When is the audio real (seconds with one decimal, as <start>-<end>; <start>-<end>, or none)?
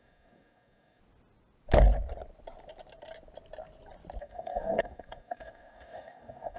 1.0-4.2